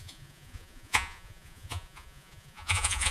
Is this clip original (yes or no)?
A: no